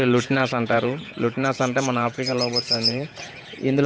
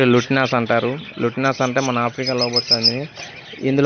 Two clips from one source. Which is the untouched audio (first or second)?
second